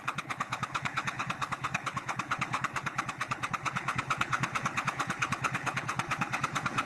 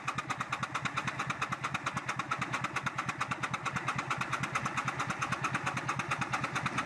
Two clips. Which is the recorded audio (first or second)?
second